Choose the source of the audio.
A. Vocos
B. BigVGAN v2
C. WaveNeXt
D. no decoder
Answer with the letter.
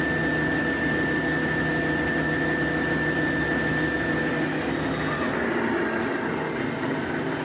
D